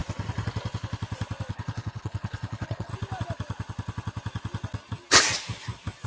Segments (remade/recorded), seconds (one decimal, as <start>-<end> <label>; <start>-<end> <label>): 0.0-1.5 recorded; 1.5-2.9 remade; 2.9-6.1 recorded

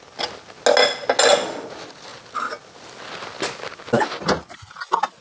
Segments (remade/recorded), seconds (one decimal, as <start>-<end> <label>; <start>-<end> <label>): 0.0-5.2 recorded

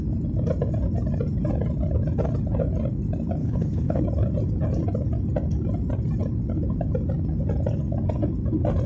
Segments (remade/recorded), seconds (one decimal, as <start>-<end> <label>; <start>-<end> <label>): 0.0-3.4 recorded; 3.4-4.0 remade; 4.0-8.9 recorded

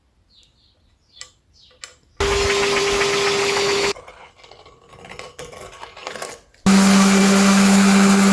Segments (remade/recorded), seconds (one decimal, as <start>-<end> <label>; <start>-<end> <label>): 0.0-3.4 recorded; 3.4-4.3 remade; 4.3-8.3 recorded

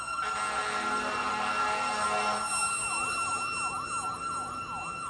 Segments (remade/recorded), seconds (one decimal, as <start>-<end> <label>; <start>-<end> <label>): 0.0-5.1 recorded

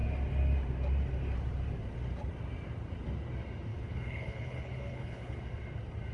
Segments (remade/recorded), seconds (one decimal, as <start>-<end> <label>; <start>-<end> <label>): 0.0-3.7 recorded; 3.7-5.4 remade; 5.4-6.1 recorded